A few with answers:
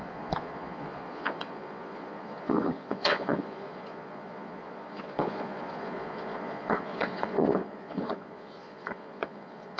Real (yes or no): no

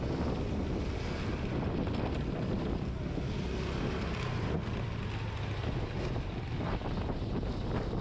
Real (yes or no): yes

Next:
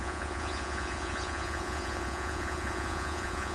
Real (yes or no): no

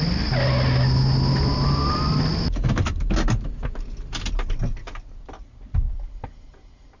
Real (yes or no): yes